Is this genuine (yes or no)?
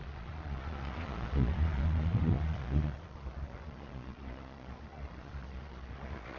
no